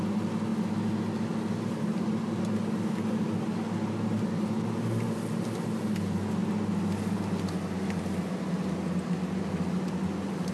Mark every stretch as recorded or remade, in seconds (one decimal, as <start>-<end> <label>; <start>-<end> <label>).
0.0-10.5 recorded

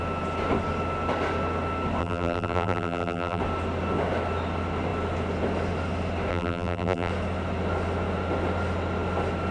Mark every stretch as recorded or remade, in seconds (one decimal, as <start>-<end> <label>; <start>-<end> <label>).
0.0-2.0 recorded; 2.0-3.4 remade; 3.4-6.3 recorded; 6.3-7.1 remade; 7.1-9.5 recorded

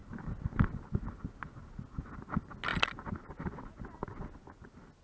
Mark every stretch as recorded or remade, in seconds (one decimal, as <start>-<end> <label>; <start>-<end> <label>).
0.0-5.0 recorded

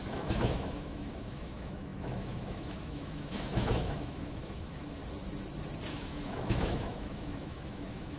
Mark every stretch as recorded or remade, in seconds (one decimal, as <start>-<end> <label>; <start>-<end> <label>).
0.0-5.0 remade; 5.0-5.9 recorded; 5.9-8.2 remade

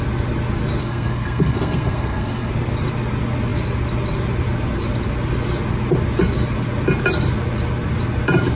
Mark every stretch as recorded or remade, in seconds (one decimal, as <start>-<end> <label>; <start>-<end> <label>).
0.0-0.8 recorded; 0.8-2.5 remade; 2.5-8.6 recorded